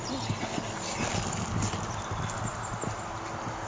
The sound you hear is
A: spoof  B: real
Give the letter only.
B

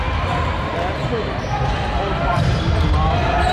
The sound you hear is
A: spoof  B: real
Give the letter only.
B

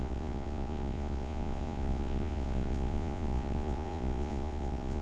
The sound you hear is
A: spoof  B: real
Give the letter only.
A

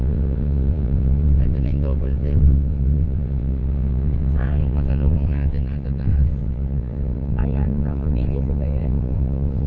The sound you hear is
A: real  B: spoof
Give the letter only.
B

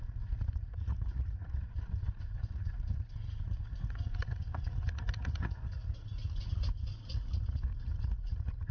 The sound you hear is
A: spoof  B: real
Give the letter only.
A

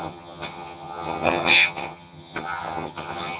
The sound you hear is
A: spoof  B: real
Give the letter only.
A